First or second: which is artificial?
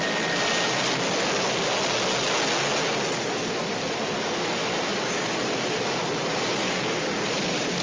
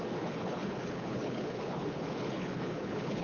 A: second